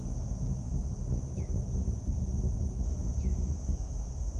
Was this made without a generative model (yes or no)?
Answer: no